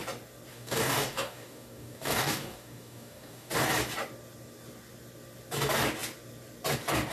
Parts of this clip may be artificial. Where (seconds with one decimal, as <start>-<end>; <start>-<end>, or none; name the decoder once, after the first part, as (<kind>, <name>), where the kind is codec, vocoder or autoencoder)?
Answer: 0.5-3.5 (codec, DAC)